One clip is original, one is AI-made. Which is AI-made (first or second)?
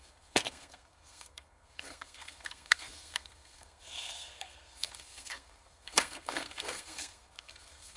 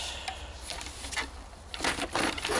first